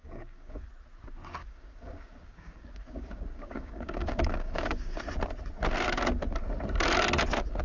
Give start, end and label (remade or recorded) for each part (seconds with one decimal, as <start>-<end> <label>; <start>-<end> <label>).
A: 0.0-0.7 remade; 0.7-1.4 recorded; 1.4-5.0 remade; 5.0-7.6 recorded